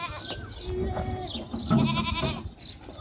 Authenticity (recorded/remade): recorded